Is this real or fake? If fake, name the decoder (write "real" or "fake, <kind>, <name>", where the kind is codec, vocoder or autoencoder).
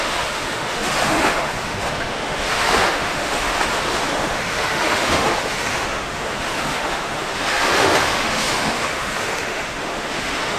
fake, autoencoder, DAC-VAE